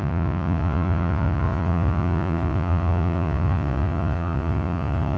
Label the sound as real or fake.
fake